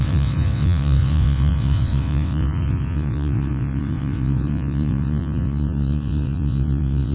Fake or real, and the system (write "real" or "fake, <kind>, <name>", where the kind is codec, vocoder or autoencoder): fake, vocoder, WaveNeXt